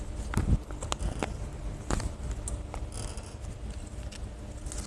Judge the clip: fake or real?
real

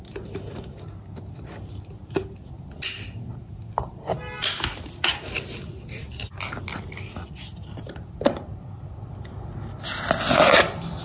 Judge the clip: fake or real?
real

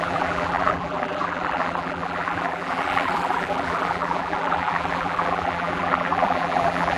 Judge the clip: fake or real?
fake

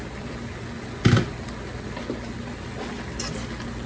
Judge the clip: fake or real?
real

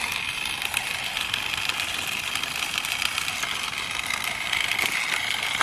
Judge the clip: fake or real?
fake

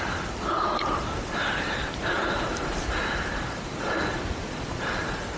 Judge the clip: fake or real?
fake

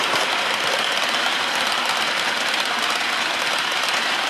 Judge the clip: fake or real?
fake